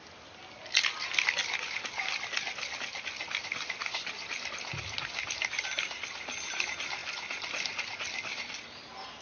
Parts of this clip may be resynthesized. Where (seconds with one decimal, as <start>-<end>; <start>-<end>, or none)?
none